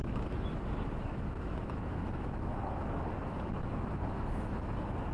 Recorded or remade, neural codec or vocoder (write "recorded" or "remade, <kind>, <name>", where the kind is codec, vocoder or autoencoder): remade, autoencoder, DAC-VAE